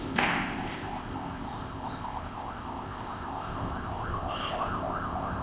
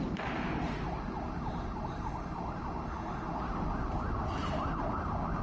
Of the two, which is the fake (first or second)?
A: first